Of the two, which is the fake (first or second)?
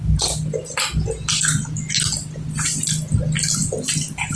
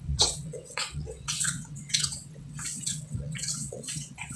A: second